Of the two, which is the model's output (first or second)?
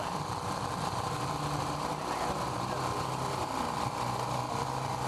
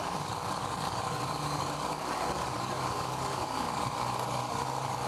second